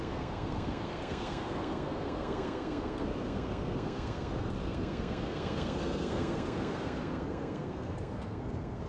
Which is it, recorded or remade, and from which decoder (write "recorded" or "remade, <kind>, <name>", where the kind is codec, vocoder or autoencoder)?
remade, codec, SNAC